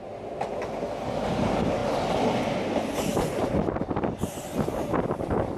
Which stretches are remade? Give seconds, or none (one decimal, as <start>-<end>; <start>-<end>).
none